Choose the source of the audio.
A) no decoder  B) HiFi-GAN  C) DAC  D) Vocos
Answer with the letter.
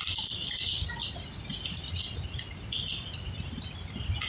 A